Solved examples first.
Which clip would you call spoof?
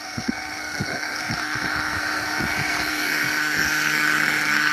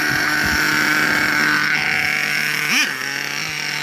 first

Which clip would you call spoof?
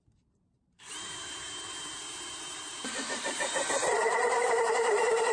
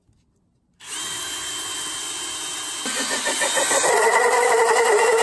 first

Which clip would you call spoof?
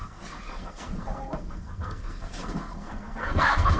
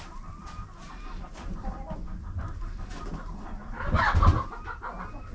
first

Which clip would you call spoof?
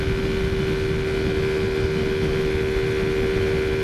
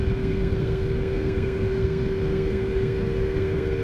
second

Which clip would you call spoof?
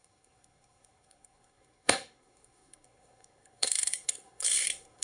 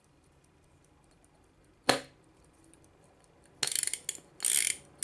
first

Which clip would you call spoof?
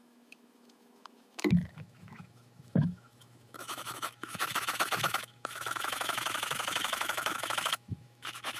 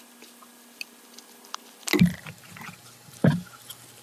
first